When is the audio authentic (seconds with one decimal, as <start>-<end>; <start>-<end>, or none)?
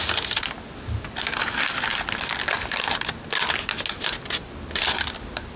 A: 0.0-5.6